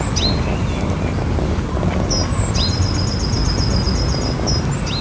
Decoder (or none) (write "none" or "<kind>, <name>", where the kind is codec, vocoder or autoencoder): none